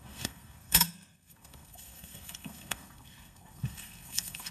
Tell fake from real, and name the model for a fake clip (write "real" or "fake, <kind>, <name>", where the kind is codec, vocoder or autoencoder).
fake, codec, SNAC